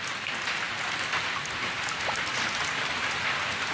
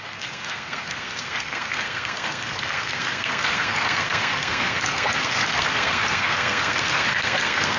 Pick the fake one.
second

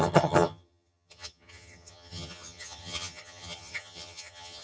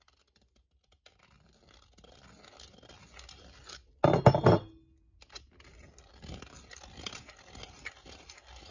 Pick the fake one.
first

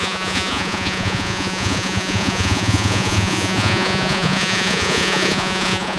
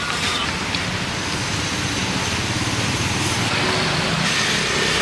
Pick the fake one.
first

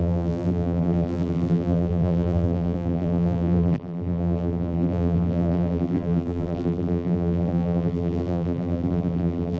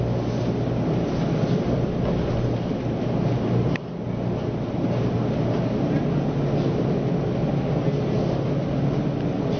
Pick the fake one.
first